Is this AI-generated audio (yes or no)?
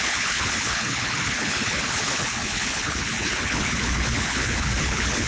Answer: yes